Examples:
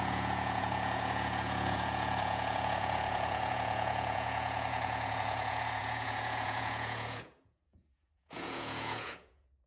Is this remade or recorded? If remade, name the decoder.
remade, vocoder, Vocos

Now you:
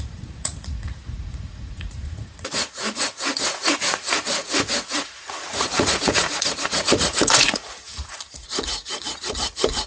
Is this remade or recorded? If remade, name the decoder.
remade, vocoder, Vocos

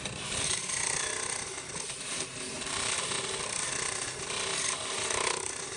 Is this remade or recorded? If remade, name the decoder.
recorded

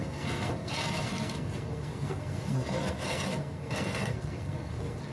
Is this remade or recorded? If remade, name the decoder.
remade, codec, SNAC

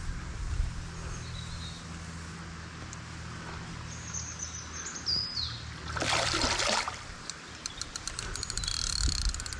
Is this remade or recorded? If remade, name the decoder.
recorded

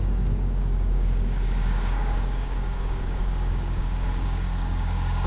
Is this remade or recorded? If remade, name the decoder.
remade, codec, DAC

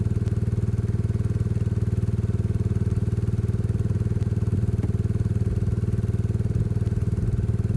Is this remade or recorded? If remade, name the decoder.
recorded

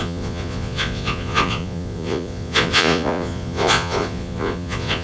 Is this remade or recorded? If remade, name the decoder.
remade, vocoder, Vocos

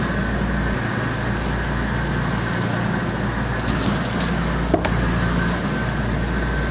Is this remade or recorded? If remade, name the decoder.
recorded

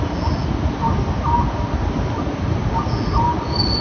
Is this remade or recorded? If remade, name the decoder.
recorded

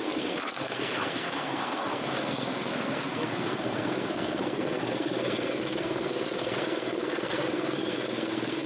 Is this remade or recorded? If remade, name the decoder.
remade, codec, SNAC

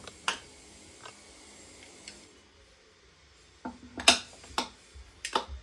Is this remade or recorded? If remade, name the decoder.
recorded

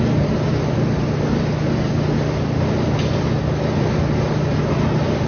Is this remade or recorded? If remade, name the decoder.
recorded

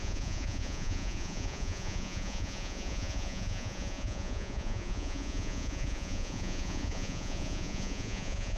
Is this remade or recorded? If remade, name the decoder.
remade, vocoder, Vocos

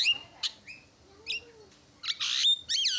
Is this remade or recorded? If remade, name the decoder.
recorded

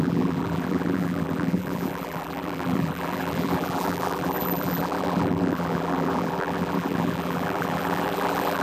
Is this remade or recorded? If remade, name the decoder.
remade, vocoder, BigVGAN v2